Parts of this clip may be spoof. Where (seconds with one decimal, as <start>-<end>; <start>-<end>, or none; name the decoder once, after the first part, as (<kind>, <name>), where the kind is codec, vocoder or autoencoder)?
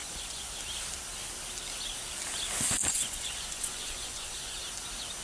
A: 0.0-0.5 (vocoder, Vocos); 2.8-4.6